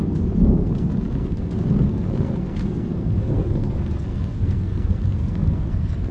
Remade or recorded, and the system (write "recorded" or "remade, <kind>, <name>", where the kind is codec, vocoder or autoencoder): remade, codec, SNAC